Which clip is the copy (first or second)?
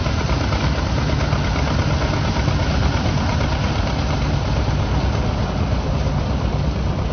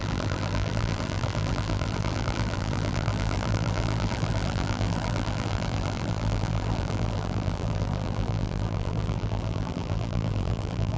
second